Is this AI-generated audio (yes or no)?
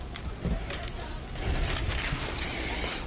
no